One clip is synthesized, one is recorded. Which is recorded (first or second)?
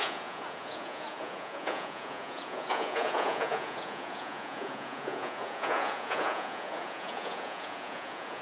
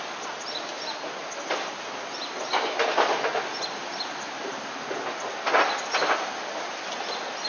second